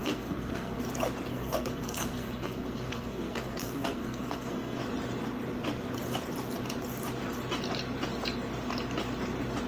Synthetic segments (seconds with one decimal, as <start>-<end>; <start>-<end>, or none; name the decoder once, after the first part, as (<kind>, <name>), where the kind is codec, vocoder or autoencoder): 0.0-0.8 (codec, SNAC); 1.3-4.8